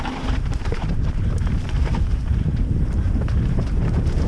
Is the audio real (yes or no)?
no